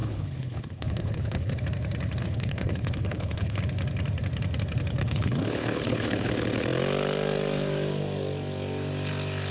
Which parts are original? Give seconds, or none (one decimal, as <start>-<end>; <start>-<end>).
1.6-2.2; 3.6-5.0; 6.3-9.5